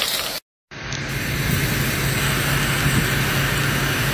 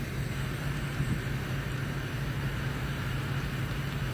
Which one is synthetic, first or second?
second